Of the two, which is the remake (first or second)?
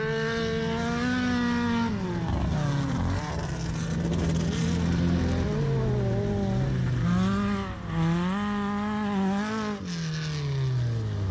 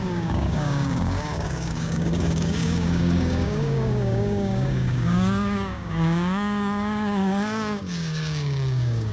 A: second